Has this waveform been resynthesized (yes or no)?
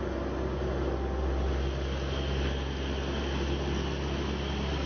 no